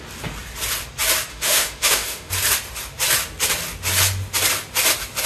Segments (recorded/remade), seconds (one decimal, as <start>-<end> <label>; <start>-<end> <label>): 0.0-1.3 recorded; 1.3-2.3 remade; 2.3-5.3 recorded